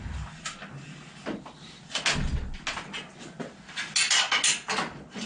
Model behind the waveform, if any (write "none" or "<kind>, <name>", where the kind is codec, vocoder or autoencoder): none